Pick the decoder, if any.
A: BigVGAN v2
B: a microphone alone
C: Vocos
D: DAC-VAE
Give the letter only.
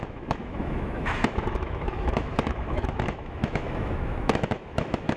D